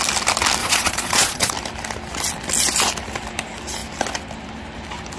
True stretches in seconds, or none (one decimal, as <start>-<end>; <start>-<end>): 0.0-0.6; 1.5-5.2